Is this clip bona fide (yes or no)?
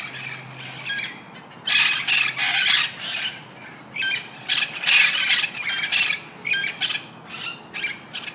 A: yes